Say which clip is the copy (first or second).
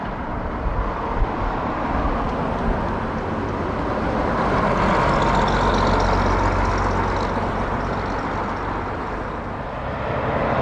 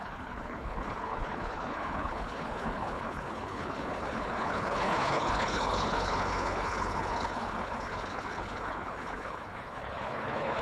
second